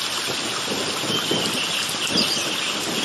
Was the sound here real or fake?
real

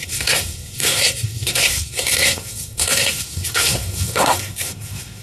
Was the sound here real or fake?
fake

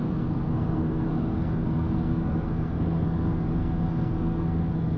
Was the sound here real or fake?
fake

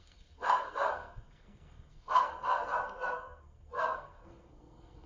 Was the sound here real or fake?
fake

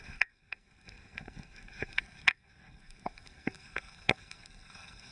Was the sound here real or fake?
fake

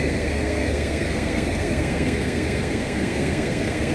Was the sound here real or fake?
fake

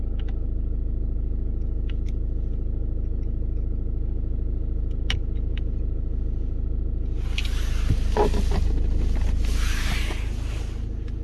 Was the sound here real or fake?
real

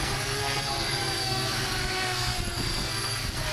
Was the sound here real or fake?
fake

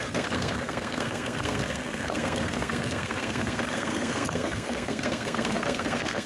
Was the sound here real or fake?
fake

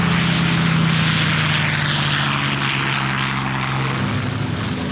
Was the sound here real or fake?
real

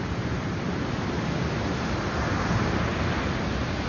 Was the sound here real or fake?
real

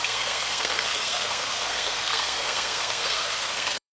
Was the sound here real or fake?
fake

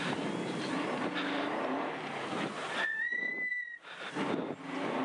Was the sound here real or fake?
real